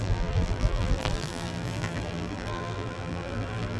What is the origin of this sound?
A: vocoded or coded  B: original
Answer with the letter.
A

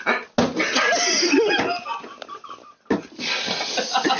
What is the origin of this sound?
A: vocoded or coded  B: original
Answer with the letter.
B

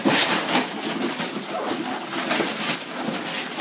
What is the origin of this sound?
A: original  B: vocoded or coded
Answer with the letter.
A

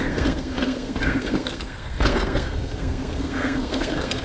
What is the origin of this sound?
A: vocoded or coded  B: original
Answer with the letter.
A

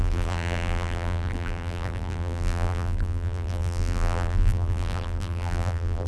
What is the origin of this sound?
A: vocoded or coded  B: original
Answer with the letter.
A